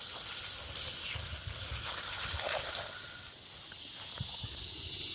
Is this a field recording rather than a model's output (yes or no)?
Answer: yes